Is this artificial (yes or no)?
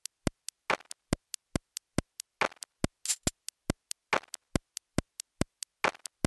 no